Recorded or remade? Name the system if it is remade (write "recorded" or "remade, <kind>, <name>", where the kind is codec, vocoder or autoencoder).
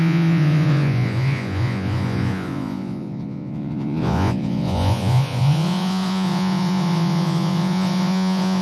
remade, vocoder, Vocos